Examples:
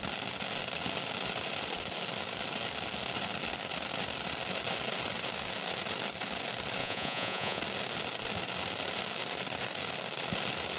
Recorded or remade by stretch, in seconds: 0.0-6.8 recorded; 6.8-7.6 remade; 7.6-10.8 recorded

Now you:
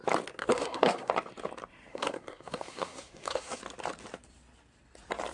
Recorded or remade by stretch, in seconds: 0.0-0.4 recorded; 0.4-1.1 remade; 1.1-1.9 recorded; 1.9-3.6 remade; 3.6-5.3 recorded

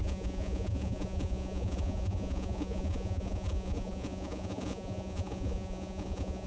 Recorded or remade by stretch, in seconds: 0.0-6.5 remade

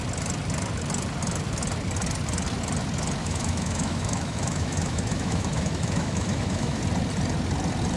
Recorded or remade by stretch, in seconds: 0.0-3.2 recorded; 3.2-6.8 remade; 6.8-8.0 recorded